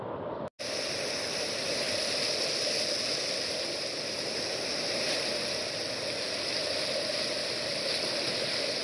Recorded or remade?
recorded